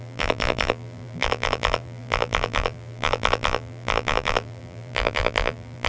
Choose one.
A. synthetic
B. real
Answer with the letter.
A